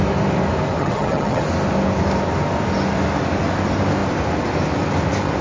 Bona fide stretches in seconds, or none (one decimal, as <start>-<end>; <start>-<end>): 0.0-0.8; 1.4-5.4